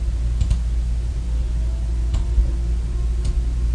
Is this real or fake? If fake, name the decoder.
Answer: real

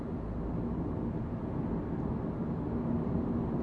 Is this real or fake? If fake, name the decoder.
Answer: real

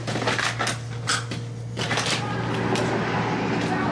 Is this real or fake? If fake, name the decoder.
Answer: real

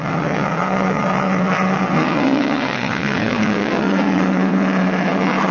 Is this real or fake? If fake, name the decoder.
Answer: fake, vocoder, WaveNeXt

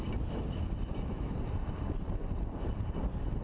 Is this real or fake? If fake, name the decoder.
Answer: real